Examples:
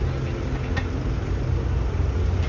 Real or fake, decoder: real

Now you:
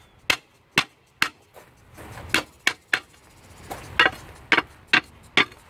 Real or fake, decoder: real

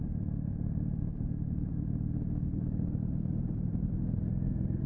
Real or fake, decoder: fake, vocoder, BigVGAN v2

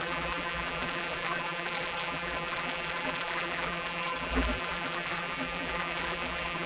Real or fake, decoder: fake, vocoder, BigVGAN v2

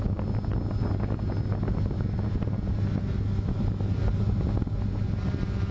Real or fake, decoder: real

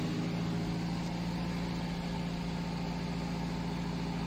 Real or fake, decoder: real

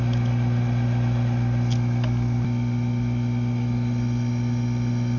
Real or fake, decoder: real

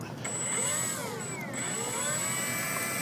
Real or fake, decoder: real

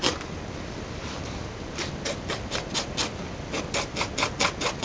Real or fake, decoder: real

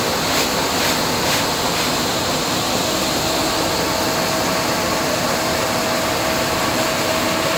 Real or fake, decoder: real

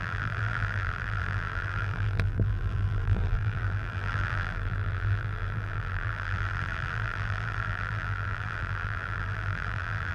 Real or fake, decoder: fake, vocoder, BigVGAN v2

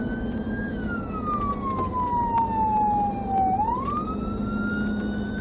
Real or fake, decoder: real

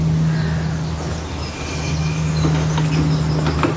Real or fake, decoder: real